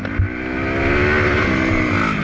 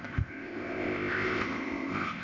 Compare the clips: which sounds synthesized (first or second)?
second